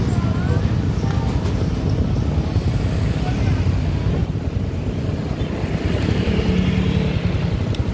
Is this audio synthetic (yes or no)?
no